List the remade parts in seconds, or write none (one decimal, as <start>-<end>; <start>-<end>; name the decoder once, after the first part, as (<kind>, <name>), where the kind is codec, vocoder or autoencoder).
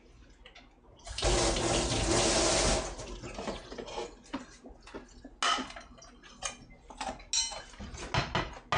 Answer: none